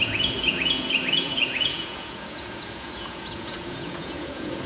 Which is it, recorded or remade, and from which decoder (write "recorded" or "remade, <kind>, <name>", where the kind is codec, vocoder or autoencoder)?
remade, vocoder, Vocos